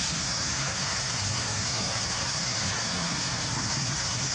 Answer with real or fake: fake